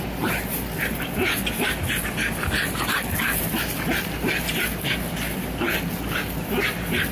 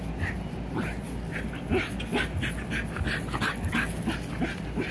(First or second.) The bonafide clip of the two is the second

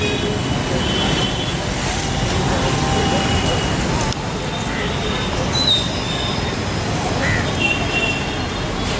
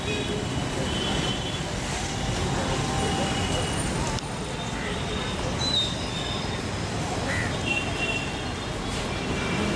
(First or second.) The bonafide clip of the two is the first